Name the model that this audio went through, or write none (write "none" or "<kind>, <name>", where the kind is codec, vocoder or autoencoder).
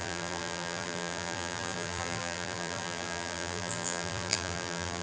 vocoder, BigVGAN v2